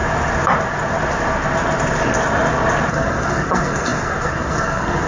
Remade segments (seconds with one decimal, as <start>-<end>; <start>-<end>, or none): 2.9-5.1